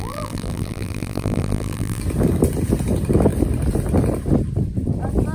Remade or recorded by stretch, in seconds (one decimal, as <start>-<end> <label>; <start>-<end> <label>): 0.0-2.0 remade; 2.0-5.3 recorded